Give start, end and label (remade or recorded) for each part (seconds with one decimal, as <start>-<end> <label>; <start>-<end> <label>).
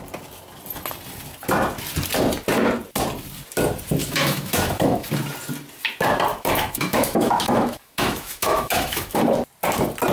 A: 0.0-4.0 recorded; 4.0-5.1 remade; 5.1-6.3 recorded; 6.3-9.2 remade; 9.2-10.1 recorded